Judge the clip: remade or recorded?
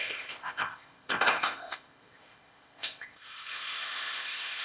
remade